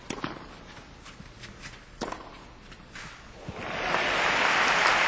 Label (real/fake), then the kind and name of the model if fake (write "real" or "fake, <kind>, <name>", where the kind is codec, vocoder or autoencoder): real